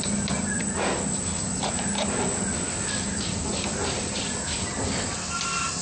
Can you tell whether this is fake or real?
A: real